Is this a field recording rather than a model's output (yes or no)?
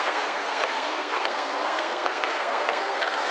no